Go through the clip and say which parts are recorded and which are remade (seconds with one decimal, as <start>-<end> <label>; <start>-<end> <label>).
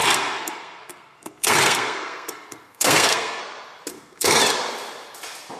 0.0-3.4 remade; 3.4-3.9 recorded; 3.9-4.4 remade; 4.4-5.6 recorded